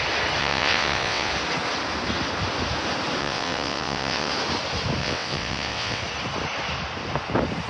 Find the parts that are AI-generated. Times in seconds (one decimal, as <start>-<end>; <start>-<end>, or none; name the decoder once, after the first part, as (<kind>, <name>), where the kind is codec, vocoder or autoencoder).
0.4-1.3 (vocoder, WaveNeXt); 3.2-4.3; 5.0-6.0